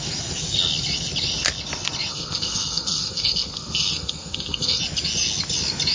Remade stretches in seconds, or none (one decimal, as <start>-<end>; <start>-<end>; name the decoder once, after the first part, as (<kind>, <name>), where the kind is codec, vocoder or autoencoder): 2.1-4.8 (codec, SNAC)